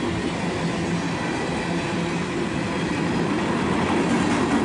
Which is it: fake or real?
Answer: real